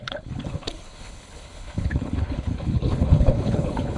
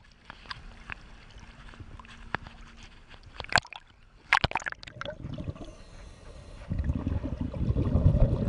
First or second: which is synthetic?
first